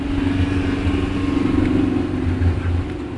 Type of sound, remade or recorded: recorded